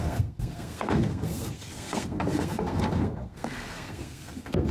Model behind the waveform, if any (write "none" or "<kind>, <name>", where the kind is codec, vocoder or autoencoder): codec, SNAC